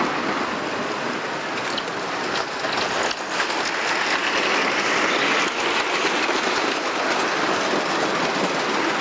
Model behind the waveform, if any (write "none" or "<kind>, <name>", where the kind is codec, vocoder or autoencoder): none